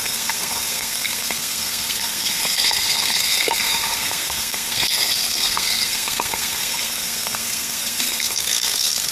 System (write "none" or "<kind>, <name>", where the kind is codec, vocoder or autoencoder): codec, SNAC